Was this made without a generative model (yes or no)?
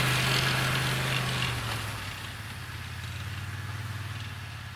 yes